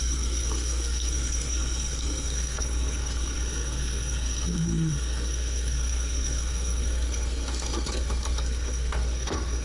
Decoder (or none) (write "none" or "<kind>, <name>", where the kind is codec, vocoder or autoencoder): codec, SNAC